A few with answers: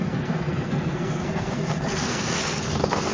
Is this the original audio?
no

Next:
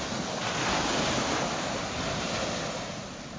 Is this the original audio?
yes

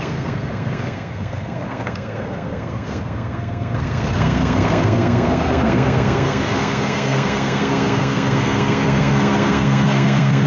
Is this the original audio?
no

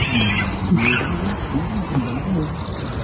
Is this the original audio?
yes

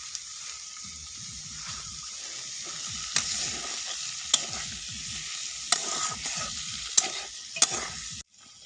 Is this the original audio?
yes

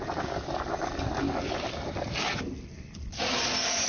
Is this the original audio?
yes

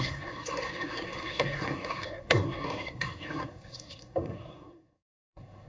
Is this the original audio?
no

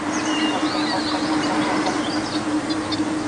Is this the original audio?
yes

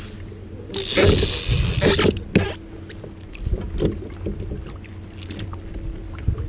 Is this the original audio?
yes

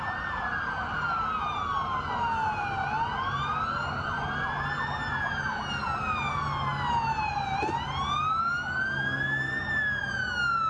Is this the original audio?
yes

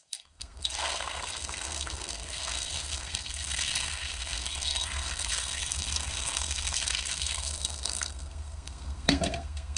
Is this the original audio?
no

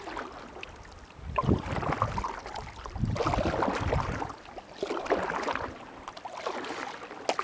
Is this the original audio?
yes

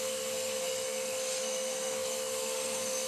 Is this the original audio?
no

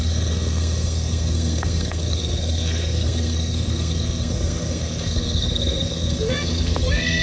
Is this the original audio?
no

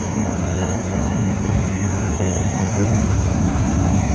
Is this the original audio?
no